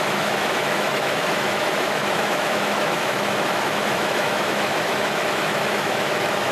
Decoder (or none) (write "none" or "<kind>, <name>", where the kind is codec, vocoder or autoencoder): autoencoder, DAC-VAE